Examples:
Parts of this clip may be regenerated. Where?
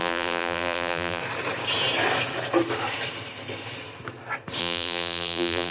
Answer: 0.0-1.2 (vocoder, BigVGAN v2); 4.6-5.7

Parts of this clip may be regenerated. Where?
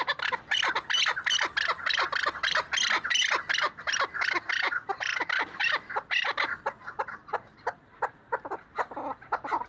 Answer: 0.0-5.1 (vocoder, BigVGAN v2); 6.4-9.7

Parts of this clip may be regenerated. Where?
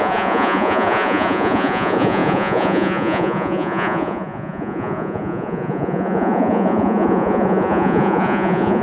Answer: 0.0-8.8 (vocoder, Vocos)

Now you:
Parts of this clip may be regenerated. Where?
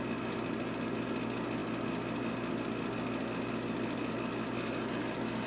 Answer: none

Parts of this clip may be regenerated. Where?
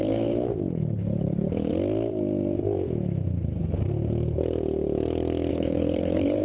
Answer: 0.0-1.7 (codec, HILCodec); 5.5-6.4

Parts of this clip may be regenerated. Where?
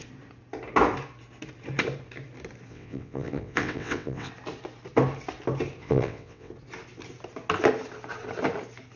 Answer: 2.7-4.3 (vocoder, WaveNeXt); 5.8-6.5